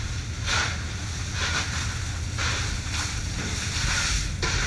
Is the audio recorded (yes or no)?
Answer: yes